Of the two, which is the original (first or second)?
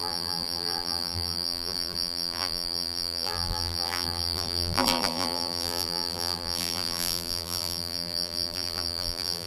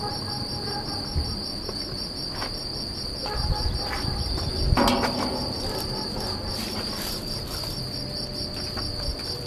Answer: second